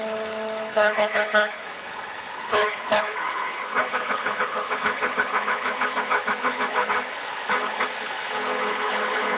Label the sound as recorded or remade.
remade